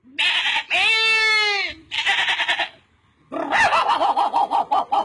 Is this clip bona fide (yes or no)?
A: yes